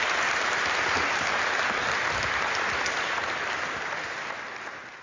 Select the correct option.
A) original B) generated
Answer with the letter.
A